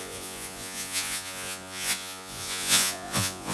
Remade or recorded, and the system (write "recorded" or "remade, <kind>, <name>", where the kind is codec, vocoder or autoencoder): remade, vocoder, Vocos